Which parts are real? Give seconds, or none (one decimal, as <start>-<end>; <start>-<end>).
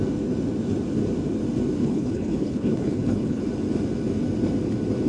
0.0-1.8; 3.4-5.1